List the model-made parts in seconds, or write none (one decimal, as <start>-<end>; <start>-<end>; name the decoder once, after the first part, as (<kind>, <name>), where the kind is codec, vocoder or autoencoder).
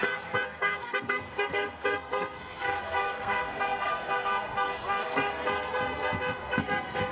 0.0-7.1 (codec, SNAC)